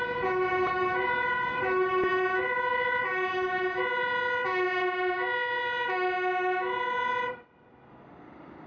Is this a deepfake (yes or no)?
no